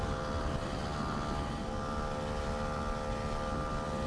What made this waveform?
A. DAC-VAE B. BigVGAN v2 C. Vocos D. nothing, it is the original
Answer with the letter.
D